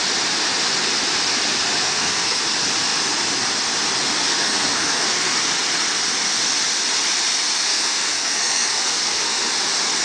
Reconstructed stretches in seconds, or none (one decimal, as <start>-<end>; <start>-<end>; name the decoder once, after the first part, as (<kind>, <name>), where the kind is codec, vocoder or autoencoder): 1.8-2.4 (codec, SNAC); 4.3-5.4; 7.7-9.5